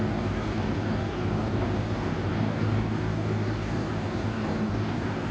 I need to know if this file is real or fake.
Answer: fake